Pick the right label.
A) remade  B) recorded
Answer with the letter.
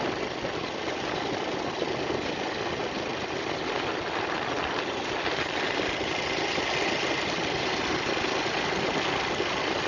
B